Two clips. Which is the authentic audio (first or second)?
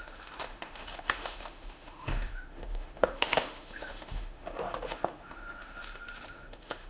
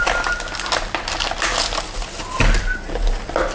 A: second